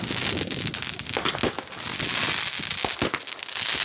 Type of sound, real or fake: real